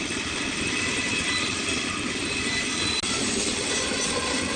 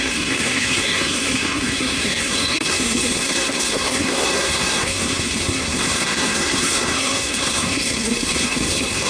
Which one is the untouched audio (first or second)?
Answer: first